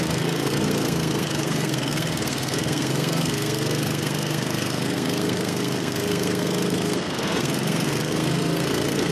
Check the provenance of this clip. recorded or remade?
remade